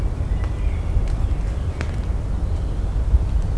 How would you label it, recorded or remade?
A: recorded